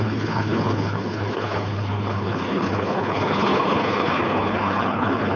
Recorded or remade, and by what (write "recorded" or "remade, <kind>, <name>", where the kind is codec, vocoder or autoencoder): remade, codec, HILCodec